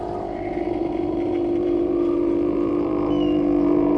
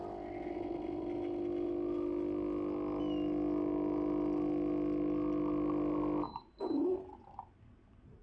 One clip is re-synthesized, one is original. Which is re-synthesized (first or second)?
first